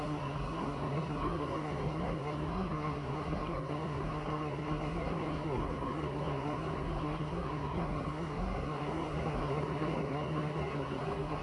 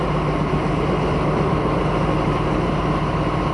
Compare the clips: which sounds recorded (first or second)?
second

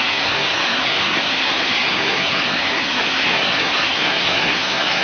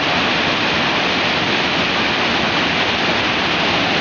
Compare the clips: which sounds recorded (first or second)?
second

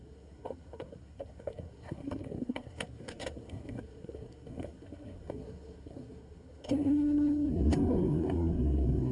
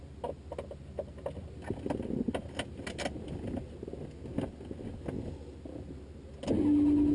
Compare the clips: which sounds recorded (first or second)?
second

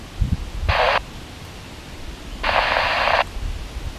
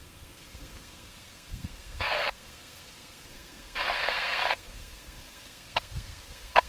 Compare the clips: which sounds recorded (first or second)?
first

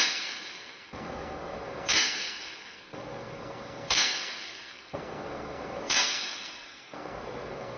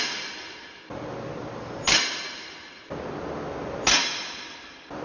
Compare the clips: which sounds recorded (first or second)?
second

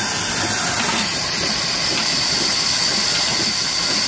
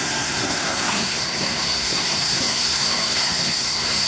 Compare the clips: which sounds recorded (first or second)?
first